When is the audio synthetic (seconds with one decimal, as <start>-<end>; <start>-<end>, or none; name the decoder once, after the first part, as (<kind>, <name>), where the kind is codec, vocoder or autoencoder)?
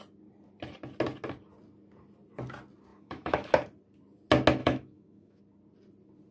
2.9-3.5 (autoencoder, DAC-VAE); 4.6-5.4